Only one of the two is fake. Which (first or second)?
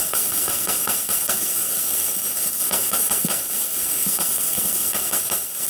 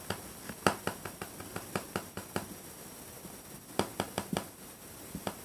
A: first